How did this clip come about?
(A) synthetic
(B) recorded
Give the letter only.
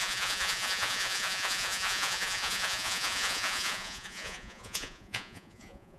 A